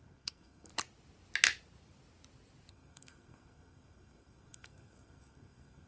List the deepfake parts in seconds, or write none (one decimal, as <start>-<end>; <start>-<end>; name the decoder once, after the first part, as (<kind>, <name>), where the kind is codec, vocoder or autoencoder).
0.0-0.7 (codec, SNAC); 2.7-5.9